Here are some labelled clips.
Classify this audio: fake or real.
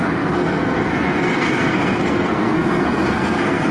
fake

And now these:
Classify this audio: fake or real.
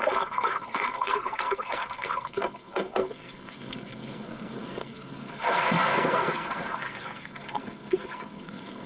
fake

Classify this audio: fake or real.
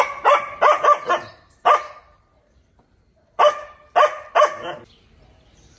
real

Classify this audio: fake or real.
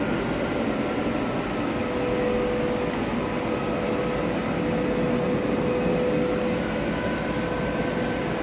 real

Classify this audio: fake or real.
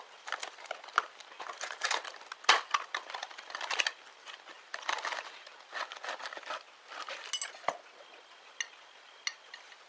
real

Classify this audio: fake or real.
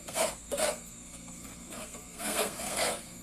fake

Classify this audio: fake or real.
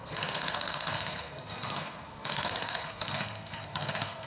fake